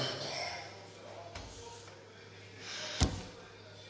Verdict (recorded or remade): recorded